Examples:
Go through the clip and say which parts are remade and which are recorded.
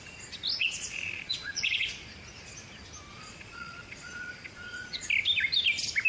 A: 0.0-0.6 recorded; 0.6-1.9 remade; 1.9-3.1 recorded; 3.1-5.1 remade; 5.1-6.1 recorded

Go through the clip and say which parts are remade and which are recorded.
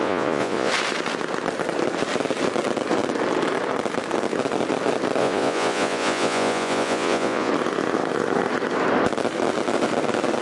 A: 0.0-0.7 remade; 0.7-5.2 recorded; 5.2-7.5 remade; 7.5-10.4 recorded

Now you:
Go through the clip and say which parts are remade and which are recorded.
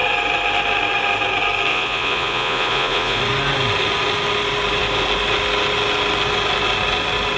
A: 0.0-1.7 recorded; 1.7-3.2 remade; 3.2-7.4 recorded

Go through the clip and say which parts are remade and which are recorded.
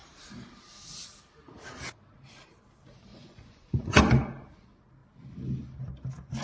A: 0.0-3.1 recorded; 3.1-4.0 remade; 4.0-6.4 recorded